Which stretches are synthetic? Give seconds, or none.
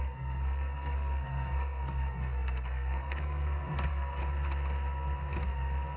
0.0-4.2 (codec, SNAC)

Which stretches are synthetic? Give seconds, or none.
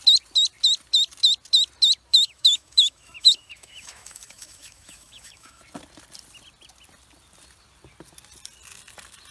2.1-5.6 (autoencoder, DAC-VAE)